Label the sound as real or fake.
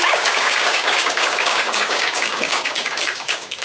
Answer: fake